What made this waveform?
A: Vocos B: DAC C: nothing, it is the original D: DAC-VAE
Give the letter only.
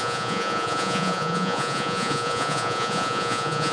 A